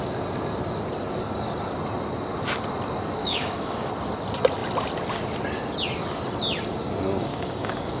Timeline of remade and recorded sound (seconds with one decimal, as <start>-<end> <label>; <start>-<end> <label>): 0.0-3.2 recorded; 3.2-3.9 remade; 3.9-7.3 recorded; 7.3-8.0 remade